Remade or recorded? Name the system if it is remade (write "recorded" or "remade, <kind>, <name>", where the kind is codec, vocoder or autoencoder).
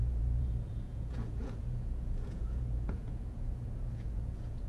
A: remade, vocoder, Vocos